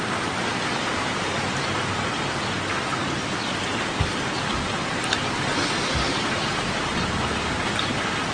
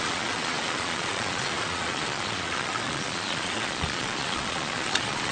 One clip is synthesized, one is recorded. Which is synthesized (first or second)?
second